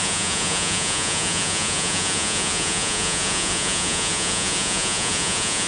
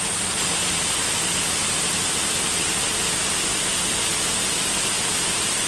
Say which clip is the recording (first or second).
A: second